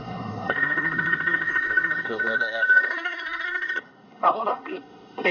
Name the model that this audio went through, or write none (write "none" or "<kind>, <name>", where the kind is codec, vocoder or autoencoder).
codec, SNAC